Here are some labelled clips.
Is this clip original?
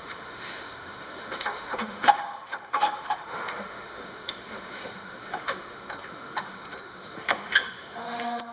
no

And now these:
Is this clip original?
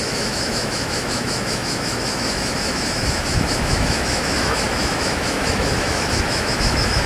no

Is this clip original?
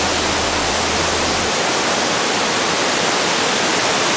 yes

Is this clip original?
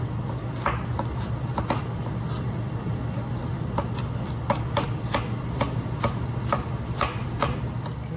yes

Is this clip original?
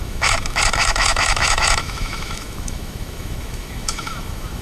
no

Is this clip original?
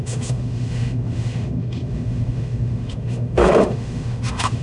no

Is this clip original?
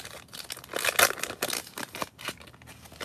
yes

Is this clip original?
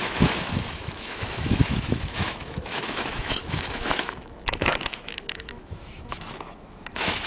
no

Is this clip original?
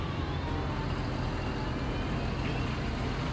yes